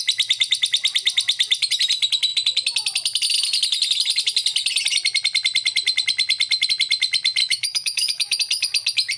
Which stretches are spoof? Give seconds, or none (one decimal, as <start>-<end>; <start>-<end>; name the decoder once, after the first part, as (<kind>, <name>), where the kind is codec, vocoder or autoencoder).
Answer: 7.4-8.4 (autoencoder, DAC-VAE)